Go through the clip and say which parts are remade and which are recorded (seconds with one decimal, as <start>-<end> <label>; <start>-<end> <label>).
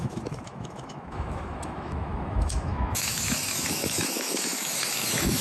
0.0-5.4 remade